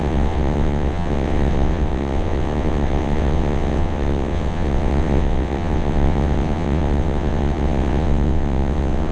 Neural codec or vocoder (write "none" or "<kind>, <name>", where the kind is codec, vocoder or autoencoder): vocoder, WaveNeXt